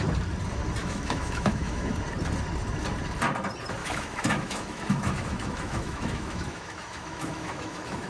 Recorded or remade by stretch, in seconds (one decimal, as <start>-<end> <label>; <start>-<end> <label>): 0.0-0.8 recorded; 0.8-1.9 remade; 1.9-3.8 recorded; 3.8-8.1 remade